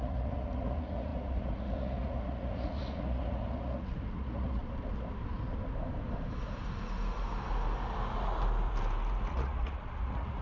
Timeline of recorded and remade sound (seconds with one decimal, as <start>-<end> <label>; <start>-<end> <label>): 0.0-4.6 remade; 4.6-9.3 recorded; 9.3-10.4 remade